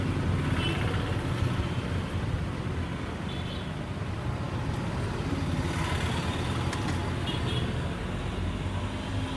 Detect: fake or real real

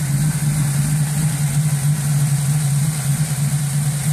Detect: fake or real real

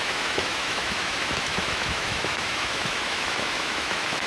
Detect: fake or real fake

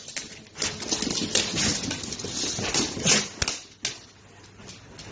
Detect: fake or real real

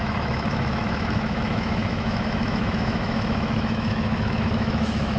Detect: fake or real fake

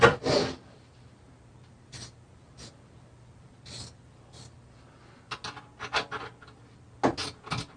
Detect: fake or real real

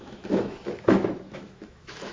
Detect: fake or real fake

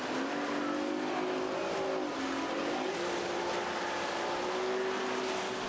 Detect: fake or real real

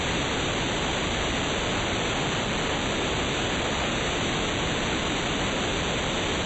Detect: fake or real real